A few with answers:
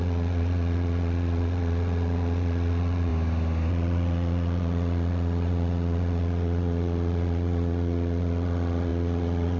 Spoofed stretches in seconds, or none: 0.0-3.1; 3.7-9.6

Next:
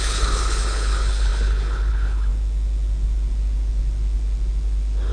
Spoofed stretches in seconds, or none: 0.0-2.3

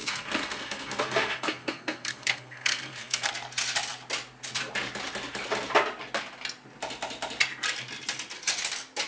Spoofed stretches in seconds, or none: 0.0-3.3

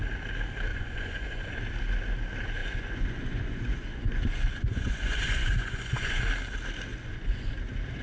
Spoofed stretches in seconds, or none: 0.7-1.6; 2.6-6.2; 6.9-7.5

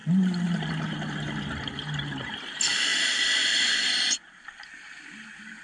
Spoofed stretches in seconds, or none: none

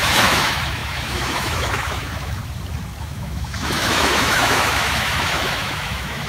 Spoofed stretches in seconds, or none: 0.0-2.4; 3.0-6.3

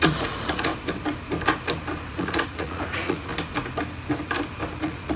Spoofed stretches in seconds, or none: 0.0-0.7; 2.1-3.3; 4.8-5.2

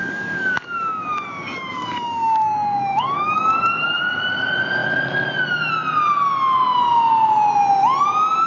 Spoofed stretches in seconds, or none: 0.0-4.0